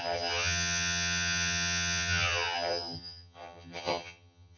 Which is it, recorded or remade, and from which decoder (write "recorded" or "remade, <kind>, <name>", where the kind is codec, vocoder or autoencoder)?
remade, vocoder, HiFi-GAN